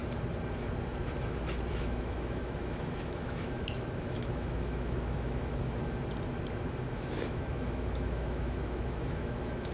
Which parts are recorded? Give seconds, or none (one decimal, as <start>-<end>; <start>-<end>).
0.0-1.7; 5.8-6.9